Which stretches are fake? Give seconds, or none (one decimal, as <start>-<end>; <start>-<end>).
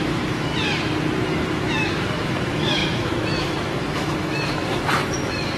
0.0-0.5; 1.4-5.6